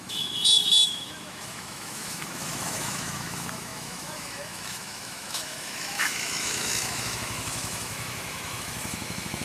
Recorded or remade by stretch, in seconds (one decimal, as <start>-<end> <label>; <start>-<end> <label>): 0.0-9.4 remade